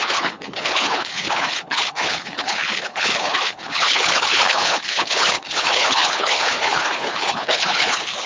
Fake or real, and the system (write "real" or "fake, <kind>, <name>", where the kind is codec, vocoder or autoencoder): fake, codec, HILCodec